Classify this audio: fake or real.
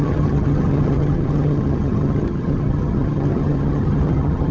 fake